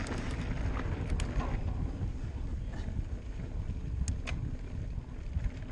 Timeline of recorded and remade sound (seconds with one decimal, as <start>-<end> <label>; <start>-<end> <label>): 0.0-5.7 recorded